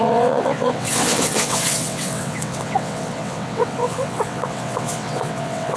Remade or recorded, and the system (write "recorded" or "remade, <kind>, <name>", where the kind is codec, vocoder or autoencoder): remade, vocoder, WaveNeXt